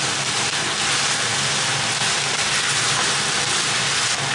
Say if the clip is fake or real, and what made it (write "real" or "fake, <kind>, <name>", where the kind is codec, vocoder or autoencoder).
real